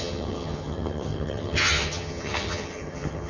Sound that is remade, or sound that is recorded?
remade